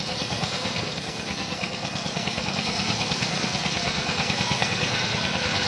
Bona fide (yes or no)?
no